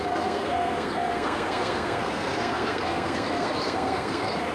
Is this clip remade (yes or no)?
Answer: yes